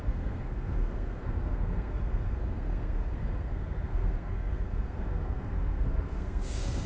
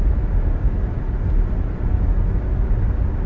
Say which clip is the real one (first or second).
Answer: second